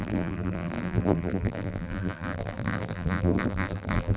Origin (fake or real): fake